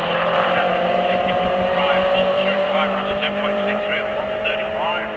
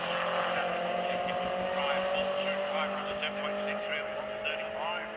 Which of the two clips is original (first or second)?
second